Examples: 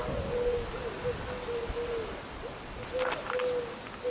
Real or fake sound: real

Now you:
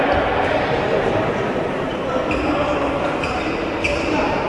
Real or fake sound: real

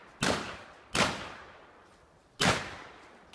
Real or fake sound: real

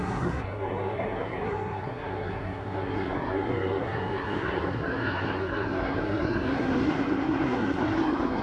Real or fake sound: fake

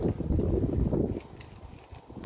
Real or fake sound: real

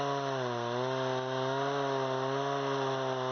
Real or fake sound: real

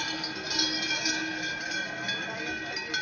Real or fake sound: real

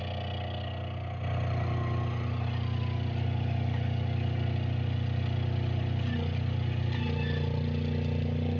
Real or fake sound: real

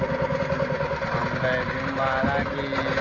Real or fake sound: real